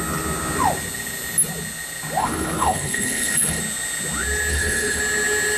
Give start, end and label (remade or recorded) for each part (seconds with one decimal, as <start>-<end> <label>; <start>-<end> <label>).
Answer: 0.0-2.2 recorded; 2.2-3.6 remade; 3.6-4.5 recorded; 4.5-5.0 remade; 5.0-5.6 recorded